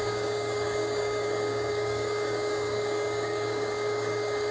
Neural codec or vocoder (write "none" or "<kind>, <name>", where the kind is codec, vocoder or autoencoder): codec, DAC